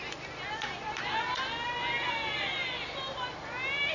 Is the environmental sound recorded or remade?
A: recorded